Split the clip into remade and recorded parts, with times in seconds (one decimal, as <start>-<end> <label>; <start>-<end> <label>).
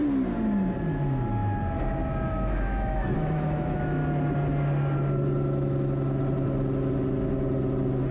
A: 0.0-0.8 recorded; 0.8-1.4 remade; 1.4-2.3 recorded; 2.3-4.0 remade; 4.0-8.1 recorded